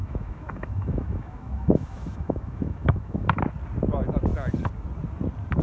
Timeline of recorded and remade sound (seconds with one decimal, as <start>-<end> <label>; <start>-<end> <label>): 0.0-3.4 remade; 3.4-5.6 recorded